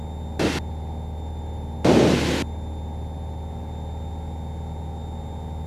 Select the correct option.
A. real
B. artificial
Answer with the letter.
A